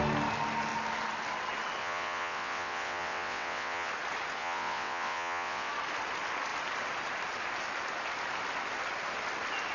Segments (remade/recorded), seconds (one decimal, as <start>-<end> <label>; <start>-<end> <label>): 0.0-1.8 recorded; 1.8-3.9 remade; 3.9-4.4 recorded; 4.4-5.7 remade; 5.7-9.7 recorded